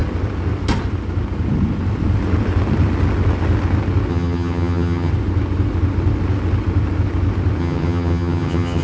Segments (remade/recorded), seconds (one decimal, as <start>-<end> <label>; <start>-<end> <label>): 0.0-4.1 recorded; 4.1-5.1 remade; 5.1-7.6 recorded; 7.6-8.8 remade